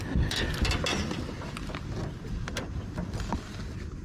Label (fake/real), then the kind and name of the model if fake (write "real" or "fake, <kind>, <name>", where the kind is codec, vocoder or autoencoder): real